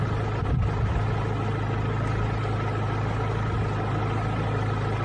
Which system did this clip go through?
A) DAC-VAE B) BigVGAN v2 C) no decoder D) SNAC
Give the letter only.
C